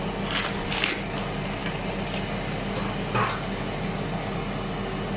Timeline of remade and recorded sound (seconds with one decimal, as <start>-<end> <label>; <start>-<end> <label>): 0.0-5.2 recorded